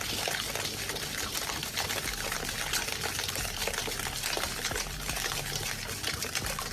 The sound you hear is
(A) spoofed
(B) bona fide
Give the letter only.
B